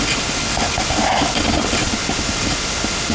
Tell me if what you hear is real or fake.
real